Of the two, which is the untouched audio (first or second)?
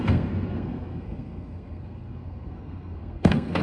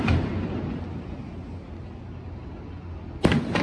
second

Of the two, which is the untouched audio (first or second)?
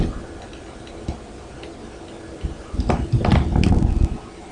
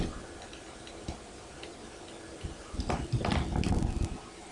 first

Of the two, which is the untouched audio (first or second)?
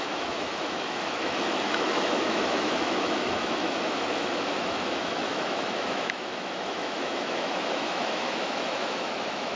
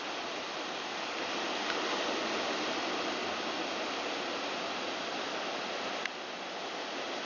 second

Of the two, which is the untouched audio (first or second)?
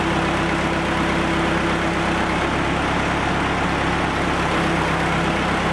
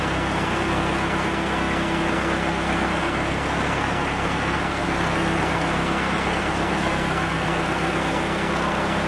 first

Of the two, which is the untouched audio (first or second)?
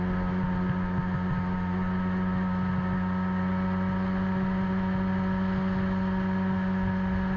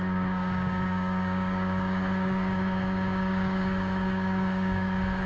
first